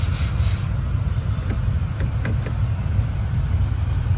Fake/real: real